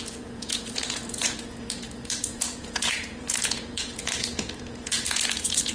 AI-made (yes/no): yes